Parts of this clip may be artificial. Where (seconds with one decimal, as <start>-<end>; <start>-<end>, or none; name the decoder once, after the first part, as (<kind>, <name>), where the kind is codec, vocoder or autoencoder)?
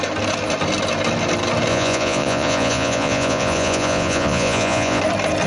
1.7-5.0 (vocoder, Vocos)